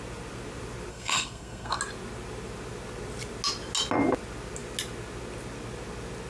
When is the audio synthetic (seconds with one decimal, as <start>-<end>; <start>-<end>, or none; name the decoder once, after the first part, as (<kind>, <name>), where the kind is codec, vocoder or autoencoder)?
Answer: 0.9-1.8 (codec, SNAC)